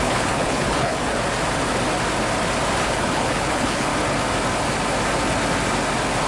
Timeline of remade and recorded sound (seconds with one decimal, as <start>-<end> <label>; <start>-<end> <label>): 0.0-1.1 remade; 1.1-2.8 recorded; 2.8-3.9 remade; 3.9-6.3 recorded